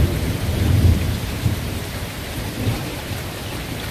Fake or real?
fake